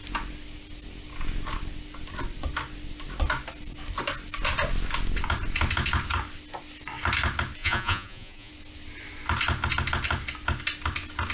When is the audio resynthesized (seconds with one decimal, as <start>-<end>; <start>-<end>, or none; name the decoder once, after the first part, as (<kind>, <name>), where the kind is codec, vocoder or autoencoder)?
7.6-8.5 (vocoder, Vocos)